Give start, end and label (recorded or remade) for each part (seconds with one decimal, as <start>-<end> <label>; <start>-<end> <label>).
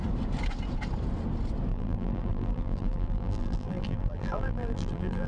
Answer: 0.0-1.7 recorded; 1.7-5.3 remade